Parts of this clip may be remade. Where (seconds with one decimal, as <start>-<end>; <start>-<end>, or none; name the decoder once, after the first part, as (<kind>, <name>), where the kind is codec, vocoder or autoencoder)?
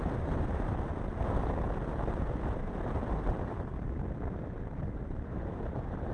0.0-0.9 (vocoder, BigVGAN v2); 2.1-3.7; 5.0-6.1